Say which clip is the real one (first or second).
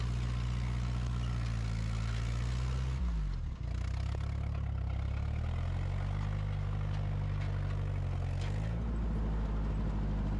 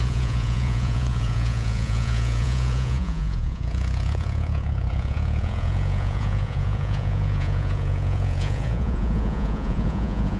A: first